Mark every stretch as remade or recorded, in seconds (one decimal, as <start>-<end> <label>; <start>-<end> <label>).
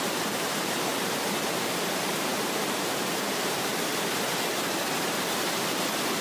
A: 0.0-3.7 remade; 3.7-6.2 recorded